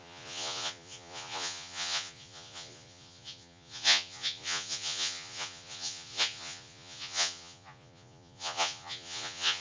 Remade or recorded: remade